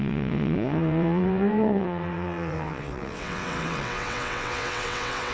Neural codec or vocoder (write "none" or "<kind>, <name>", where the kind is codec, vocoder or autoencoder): vocoder, WaveNeXt